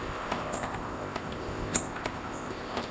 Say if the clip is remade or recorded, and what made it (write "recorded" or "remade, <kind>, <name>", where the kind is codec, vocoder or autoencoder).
remade, codec, ZipCodec